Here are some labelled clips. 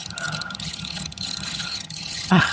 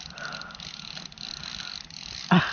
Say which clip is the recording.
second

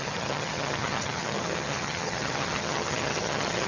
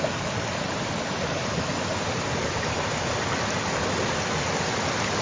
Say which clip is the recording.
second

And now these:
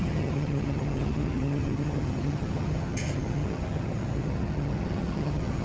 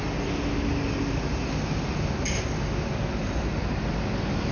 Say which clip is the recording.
second